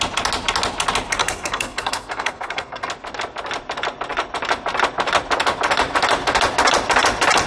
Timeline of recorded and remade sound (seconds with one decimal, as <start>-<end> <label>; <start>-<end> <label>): 0.0-1.2 recorded; 1.2-2.9 remade; 2.9-7.5 recorded